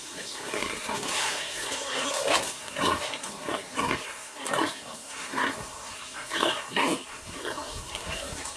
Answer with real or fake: fake